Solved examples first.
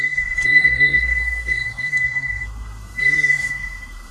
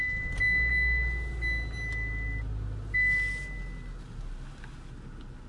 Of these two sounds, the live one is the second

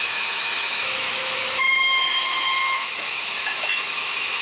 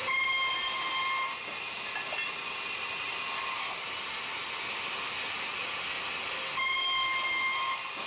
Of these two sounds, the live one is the second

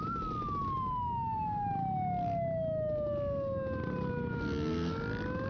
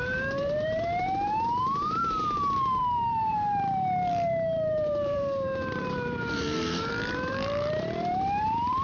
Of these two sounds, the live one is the first